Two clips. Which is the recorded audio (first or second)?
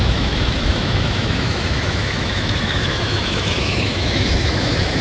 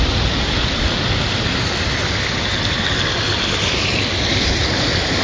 second